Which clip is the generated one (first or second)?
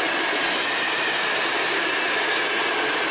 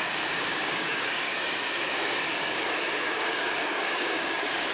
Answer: second